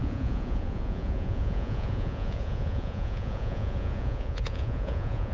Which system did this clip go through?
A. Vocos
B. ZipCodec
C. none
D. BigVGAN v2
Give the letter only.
A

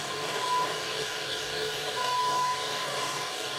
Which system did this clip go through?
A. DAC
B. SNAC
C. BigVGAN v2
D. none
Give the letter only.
A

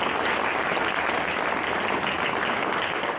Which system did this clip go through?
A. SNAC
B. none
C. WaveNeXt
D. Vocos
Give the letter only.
B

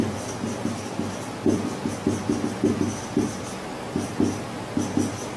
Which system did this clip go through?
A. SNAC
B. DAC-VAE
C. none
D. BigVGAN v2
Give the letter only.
C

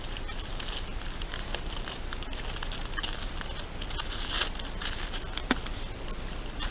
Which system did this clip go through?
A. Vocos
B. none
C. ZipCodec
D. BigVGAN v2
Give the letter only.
B